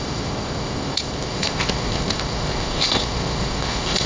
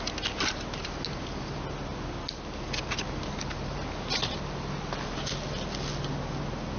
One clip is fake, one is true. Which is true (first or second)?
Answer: second